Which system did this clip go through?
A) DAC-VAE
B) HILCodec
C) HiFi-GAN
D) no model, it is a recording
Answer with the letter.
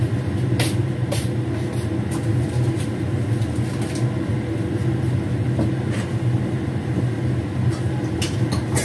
D